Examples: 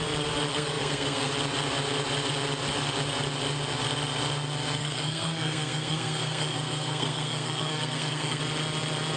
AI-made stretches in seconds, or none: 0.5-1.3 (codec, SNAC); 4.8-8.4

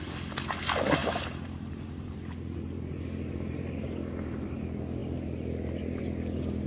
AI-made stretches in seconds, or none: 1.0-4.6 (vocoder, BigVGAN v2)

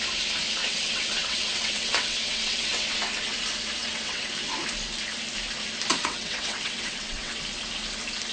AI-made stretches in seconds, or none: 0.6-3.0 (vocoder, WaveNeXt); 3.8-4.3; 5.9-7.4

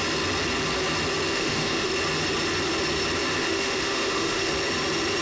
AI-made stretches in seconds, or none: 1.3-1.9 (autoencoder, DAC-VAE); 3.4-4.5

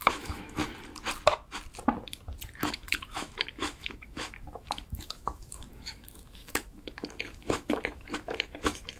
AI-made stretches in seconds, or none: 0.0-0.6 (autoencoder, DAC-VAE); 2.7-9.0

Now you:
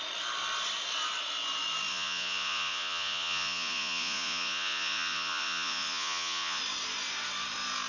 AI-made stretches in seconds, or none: 1.9-6.6 (vocoder, Vocos)

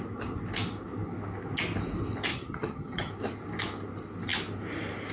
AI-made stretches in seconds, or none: 2.3-3.1 (vocoder, HiFi-GAN)